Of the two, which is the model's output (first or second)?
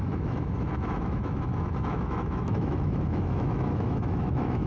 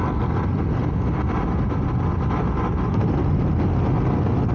first